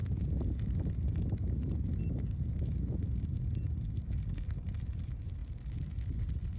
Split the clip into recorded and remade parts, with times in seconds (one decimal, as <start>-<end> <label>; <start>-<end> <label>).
0.0-6.6 recorded